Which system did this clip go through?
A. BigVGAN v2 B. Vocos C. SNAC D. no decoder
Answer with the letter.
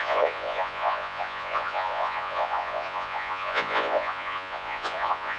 B